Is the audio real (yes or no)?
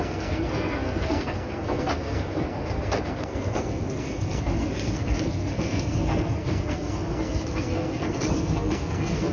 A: no